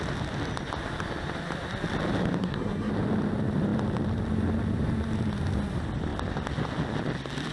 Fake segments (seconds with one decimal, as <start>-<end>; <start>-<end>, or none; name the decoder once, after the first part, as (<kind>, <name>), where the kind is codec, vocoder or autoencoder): 2.4-2.9 (codec, SNAC)